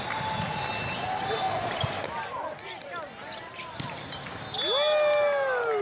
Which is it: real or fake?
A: real